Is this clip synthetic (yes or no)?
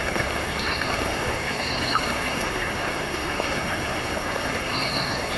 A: yes